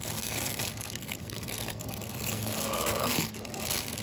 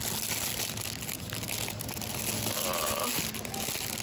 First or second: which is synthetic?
first